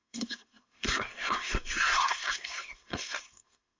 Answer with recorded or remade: remade